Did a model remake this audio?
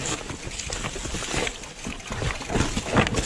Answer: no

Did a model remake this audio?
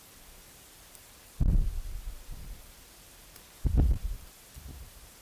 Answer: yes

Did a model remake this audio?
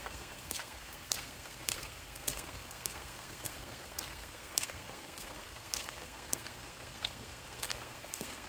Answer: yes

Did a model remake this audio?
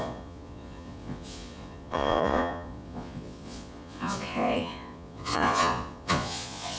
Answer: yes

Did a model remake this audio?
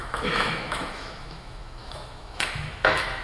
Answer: yes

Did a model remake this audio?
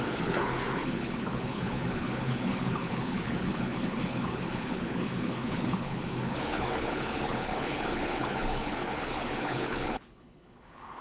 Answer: yes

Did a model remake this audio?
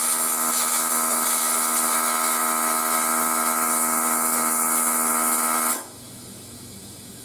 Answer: yes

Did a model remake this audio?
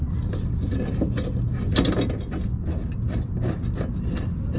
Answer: no